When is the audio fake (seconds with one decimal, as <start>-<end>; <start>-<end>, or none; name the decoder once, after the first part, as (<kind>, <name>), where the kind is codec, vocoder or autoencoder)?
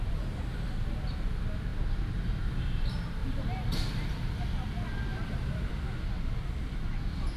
none